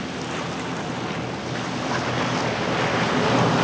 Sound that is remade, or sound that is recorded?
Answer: recorded